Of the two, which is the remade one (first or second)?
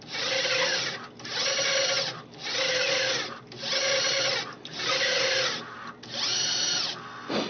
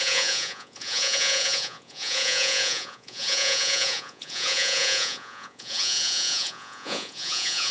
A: second